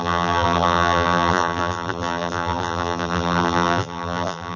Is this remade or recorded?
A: remade